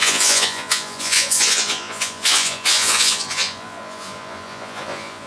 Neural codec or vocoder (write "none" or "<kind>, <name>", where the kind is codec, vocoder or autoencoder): vocoder, Vocos